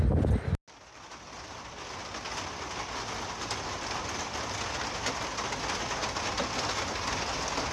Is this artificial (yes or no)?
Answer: no